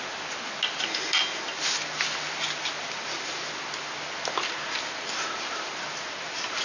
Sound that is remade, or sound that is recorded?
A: recorded